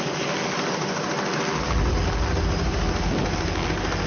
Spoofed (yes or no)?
no